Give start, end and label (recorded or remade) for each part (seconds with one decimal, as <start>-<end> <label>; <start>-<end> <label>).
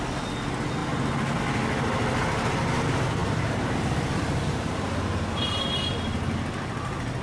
0.0-0.8 recorded; 0.8-1.4 remade; 1.4-3.2 recorded; 3.2-6.4 remade; 6.4-7.2 recorded